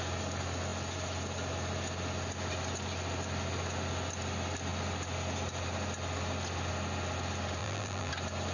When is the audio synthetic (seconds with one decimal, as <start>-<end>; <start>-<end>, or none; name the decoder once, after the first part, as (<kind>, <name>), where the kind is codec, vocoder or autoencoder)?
7.6-8.1 (vocoder, BigVGAN v2)

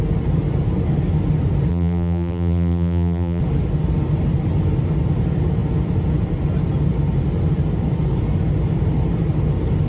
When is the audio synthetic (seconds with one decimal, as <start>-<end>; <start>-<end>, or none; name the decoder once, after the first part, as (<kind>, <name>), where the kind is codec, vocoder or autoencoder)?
1.7-3.4 (vocoder, BigVGAN v2)

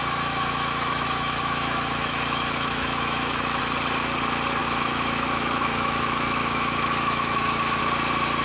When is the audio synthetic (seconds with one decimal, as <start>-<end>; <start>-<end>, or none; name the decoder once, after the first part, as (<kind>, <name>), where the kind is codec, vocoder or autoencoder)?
0.0-3.6 (autoencoder, DAC-VAE); 4.6-7.8